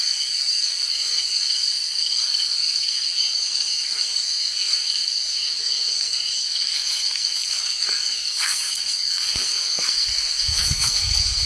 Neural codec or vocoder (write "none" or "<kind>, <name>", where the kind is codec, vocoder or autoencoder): codec, SNAC